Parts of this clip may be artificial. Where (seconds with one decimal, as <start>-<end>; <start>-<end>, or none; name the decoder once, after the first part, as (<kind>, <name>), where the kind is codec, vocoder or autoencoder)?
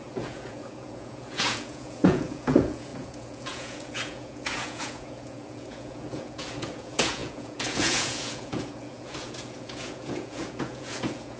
0.0-11.4 (vocoder, Vocos)